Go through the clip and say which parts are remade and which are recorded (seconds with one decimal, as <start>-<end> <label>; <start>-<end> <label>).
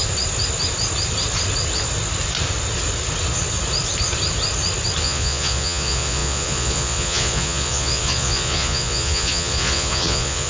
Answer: 0.0-5.0 recorded; 5.0-10.5 remade